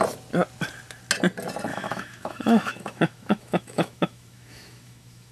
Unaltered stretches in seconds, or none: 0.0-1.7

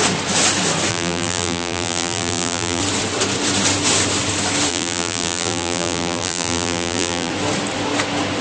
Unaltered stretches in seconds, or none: 0.0-0.9; 2.8-4.7; 7.3-8.4

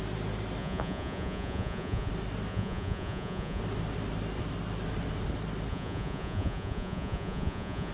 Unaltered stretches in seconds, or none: 0.0-0.6; 2.1-2.5; 3.6-5.7